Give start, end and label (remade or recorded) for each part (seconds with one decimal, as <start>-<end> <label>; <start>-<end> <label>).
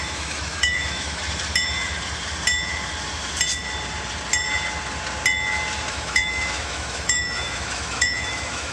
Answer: 0.0-1.2 remade; 1.2-5.9 recorded; 5.9-8.7 remade